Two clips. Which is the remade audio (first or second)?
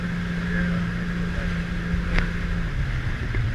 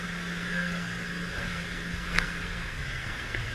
second